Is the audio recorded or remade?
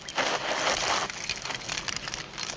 recorded